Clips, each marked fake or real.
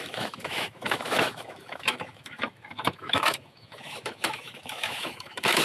fake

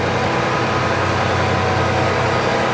real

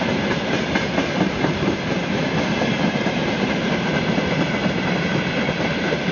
fake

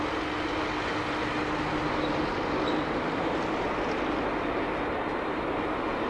real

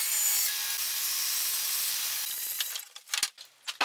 real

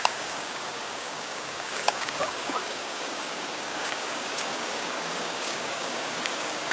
fake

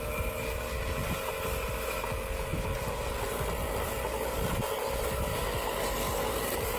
real